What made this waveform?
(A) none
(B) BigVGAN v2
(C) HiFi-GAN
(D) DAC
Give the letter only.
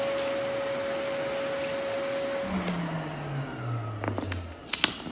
A